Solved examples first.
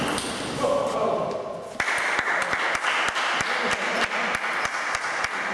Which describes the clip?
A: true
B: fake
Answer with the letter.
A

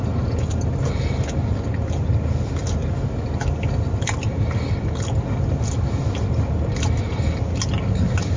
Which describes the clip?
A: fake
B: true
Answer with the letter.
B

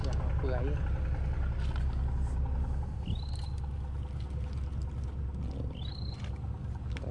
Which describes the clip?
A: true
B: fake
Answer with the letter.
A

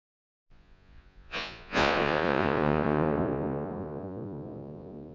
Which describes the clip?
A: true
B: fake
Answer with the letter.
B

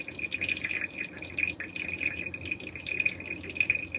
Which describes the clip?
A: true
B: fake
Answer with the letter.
A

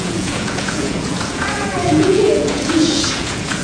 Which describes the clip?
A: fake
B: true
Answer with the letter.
A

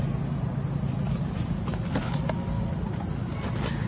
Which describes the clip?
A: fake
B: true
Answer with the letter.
B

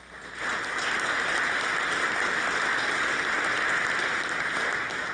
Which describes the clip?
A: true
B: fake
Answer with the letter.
A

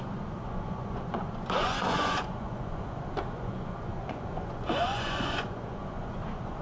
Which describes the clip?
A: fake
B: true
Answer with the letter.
A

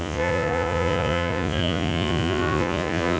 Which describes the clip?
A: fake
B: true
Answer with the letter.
A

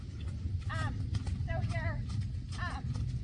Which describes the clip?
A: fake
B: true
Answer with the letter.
B